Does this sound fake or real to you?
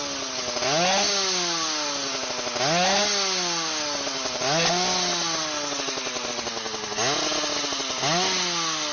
real